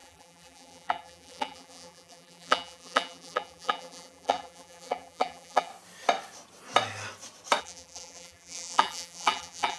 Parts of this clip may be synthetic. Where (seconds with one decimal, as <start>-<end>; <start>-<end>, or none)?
0.0-5.7; 7.6-9.8